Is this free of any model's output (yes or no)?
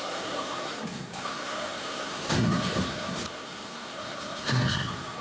no